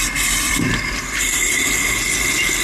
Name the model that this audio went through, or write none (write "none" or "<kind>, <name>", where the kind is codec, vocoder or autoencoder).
vocoder, BigVGAN v2